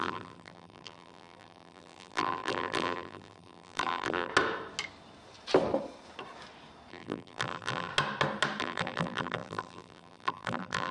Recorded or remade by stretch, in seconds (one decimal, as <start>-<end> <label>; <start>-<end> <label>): 0.0-4.3 remade; 4.3-6.9 recorded; 6.9-7.9 remade; 7.9-8.6 recorded; 8.6-10.9 remade